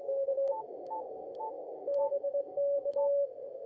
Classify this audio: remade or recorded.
remade